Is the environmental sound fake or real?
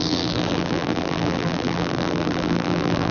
fake